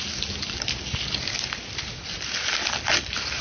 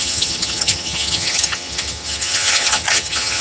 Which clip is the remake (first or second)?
second